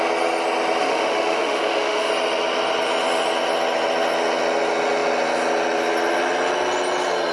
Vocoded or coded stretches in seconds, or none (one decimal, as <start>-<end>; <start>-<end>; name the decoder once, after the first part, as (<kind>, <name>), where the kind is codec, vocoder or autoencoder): 0.8-2.1 (autoencoder, DAC-VAE)